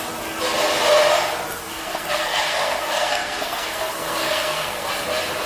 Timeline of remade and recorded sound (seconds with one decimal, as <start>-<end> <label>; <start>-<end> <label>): 0.0-1.6 recorded; 1.6-4.9 remade; 4.9-5.5 recorded